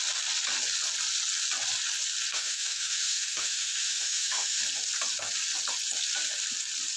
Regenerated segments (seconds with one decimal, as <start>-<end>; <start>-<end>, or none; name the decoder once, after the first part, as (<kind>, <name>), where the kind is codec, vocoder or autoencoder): 2.3-4.6 (autoencoder, DAC-VAE)